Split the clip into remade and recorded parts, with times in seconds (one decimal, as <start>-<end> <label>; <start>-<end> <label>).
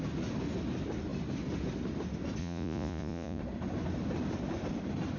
0.0-2.4 recorded; 2.4-3.4 remade; 3.4-5.2 recorded